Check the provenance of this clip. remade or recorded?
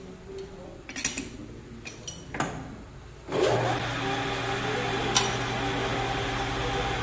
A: recorded